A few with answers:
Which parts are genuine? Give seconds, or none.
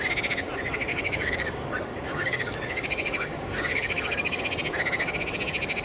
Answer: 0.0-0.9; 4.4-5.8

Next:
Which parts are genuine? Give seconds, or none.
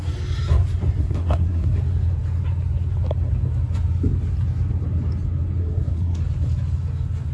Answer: 0.0-1.0; 1.8-5.6; 6.2-7.3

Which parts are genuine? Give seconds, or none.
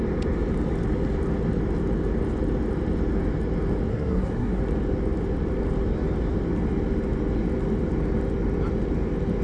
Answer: 0.0-3.9; 4.6-9.4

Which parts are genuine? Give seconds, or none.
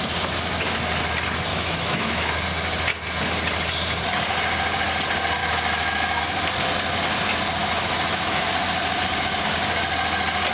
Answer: 0.0-1.5; 2.3-5.4; 6.2-7.6; 8.4-10.5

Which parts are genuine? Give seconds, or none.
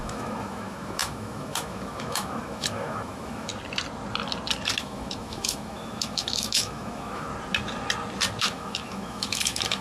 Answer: 3.5-4.8; 7.3-8.4